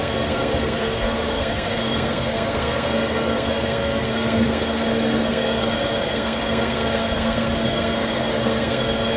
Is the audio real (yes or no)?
no